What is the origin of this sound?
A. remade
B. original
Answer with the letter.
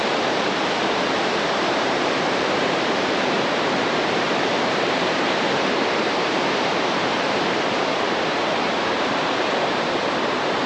A